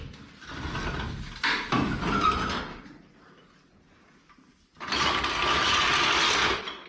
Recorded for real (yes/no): yes